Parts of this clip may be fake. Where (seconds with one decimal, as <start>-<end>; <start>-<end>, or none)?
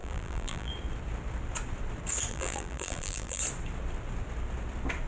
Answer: 0.0-0.7; 2.3-3.4